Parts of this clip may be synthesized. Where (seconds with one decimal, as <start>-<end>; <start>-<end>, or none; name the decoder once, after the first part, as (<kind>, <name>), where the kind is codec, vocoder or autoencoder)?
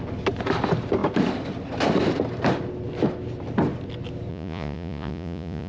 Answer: 4.3-5.7 (vocoder, Vocos)